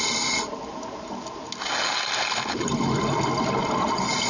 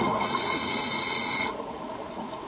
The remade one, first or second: second